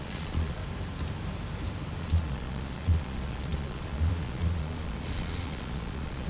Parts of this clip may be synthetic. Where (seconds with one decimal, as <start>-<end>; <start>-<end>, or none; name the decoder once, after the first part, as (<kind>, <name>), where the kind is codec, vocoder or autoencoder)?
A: 0.0-0.6 (vocoder, Vocos); 2.0-6.3